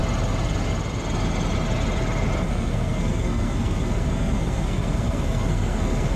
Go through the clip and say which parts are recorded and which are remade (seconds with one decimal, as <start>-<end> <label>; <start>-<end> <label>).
0.0-2.5 recorded; 2.5-6.2 remade